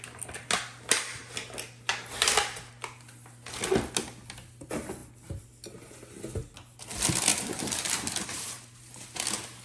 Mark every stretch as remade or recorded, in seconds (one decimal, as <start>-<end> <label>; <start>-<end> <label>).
0.0-1.9 recorded; 1.9-2.7 remade; 2.7-7.3 recorded; 7.3-9.2 remade; 9.2-9.6 recorded

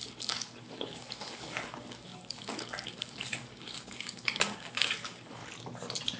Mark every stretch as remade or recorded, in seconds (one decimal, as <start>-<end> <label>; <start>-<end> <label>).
0.0-5.4 remade; 5.4-6.2 recorded

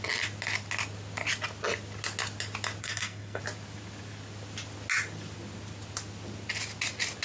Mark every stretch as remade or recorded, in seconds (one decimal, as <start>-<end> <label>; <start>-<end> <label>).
0.0-2.8 recorded; 2.8-3.4 remade; 3.4-7.2 recorded